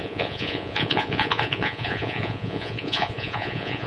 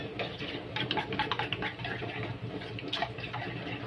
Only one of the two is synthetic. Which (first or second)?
first